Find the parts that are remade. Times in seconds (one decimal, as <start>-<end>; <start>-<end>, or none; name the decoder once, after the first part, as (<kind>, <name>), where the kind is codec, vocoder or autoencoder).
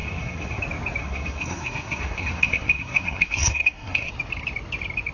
0.0-0.6 (codec, SNAC); 1.0-4.1